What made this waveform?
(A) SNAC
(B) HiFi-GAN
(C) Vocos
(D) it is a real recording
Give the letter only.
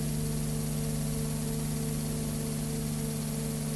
D